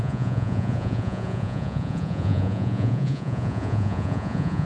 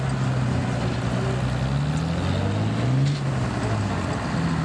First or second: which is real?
second